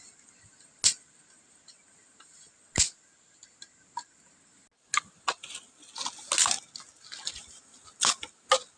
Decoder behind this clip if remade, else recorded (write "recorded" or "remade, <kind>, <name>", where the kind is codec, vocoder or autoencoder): recorded